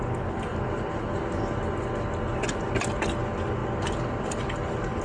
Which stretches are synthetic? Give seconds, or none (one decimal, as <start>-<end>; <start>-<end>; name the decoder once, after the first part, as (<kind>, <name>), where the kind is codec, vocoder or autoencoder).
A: 0.5-1.5 (vocoder, BigVGAN v2); 3.6-5.0